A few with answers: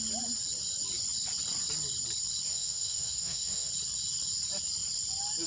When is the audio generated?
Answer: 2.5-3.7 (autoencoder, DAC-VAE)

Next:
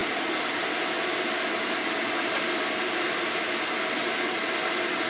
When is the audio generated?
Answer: none

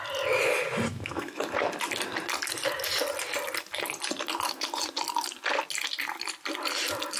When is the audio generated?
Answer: 0.9-1.5 (autoencoder, DAC-VAE)

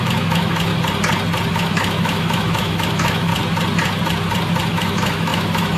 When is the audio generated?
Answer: 0.0-0.7 (autoencoder, DAC-VAE); 1.5-3.3; 4.7-5.8

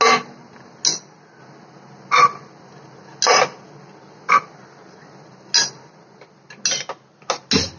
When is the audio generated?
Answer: none

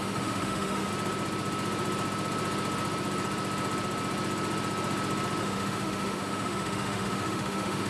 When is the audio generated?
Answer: 0.0-0.9 (autoencoder, DAC-VAE); 5.4-7.9

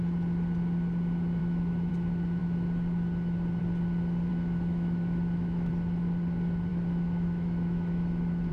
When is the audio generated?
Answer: 1.4-1.9 (autoencoder, DAC-VAE); 4.3-5.7; 6.7-8.5